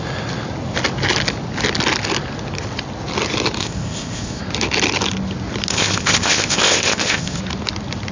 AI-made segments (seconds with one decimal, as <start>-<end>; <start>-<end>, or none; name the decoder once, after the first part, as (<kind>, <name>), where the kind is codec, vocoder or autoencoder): 3.6-4.4 (codec, ZipCodec); 5.7-7.4